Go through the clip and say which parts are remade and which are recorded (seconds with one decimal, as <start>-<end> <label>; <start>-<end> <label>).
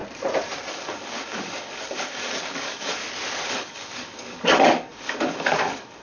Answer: 0.0-0.7 recorded; 0.7-3.0 remade; 3.0-3.5 recorded; 3.5-6.0 remade